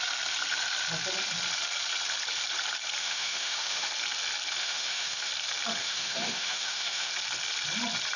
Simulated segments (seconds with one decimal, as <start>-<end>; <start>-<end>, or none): 3.0-3.9; 4.6-5.3; 5.8-7.1